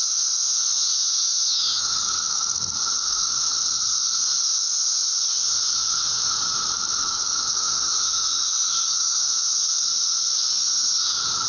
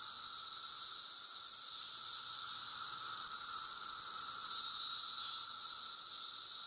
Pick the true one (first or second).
second